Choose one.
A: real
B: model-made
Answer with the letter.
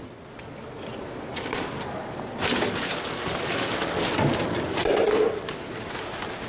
A